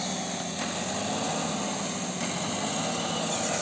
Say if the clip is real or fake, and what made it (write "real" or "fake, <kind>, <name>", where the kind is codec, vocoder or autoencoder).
real